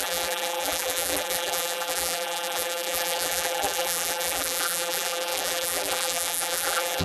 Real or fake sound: fake